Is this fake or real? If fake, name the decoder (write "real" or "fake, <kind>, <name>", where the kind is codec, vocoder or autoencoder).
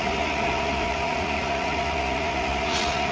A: fake, vocoder, Vocos